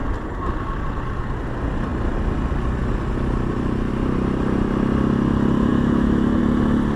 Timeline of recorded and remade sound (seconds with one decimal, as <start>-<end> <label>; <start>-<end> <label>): 0.0-5.7 recorded; 5.7-6.4 remade; 6.4-7.0 recorded